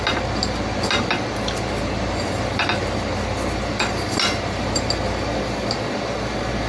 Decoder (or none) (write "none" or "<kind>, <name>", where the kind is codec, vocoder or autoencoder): none